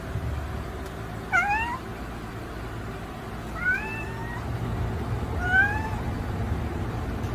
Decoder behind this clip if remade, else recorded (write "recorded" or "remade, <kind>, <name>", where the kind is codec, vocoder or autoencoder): recorded